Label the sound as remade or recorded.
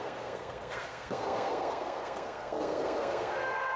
remade